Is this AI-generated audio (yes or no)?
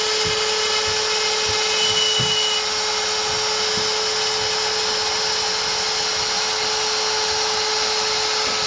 no